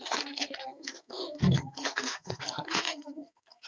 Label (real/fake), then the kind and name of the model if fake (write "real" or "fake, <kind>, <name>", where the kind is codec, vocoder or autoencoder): fake, codec, SNAC